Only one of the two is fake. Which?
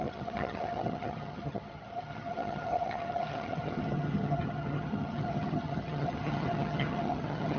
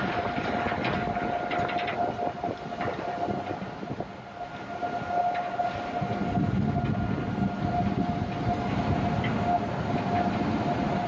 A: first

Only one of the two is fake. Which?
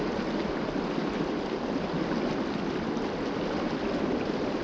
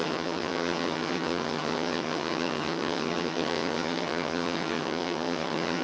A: second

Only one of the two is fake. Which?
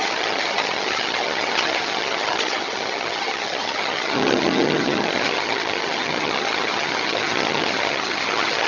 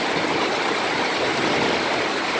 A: first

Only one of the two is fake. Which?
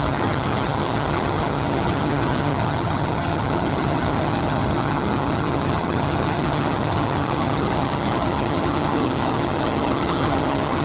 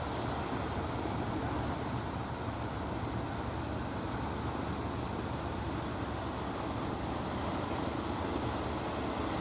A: first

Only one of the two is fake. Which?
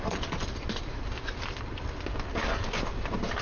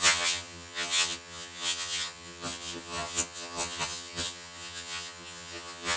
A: second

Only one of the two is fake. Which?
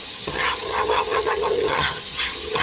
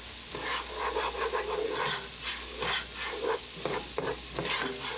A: first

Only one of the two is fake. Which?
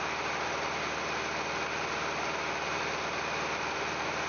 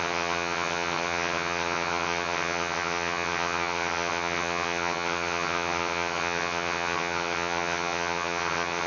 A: second